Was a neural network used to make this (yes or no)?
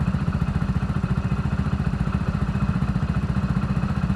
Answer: yes